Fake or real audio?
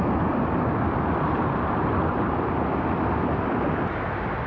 real